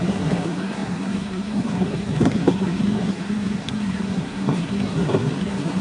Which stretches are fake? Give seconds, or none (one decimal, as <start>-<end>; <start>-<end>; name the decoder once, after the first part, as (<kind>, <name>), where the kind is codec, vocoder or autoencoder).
0.0-5.8 (codec, SNAC)